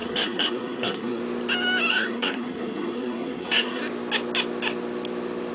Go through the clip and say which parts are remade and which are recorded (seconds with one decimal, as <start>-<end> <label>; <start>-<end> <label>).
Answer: 0.0-1.2 remade; 1.2-1.9 recorded; 1.9-3.8 remade; 3.8-5.5 recorded